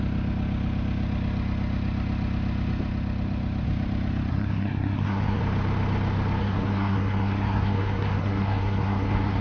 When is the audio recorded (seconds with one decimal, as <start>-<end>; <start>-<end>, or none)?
0.0-4.3; 5.4-6.4